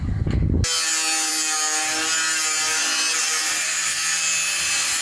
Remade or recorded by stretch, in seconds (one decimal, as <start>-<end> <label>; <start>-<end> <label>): 0.0-5.0 recorded